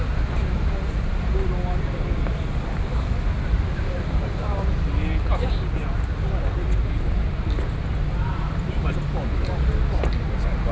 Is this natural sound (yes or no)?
yes